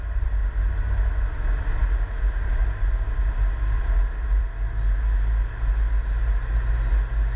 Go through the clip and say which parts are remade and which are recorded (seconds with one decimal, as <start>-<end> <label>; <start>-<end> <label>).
0.0-7.4 recorded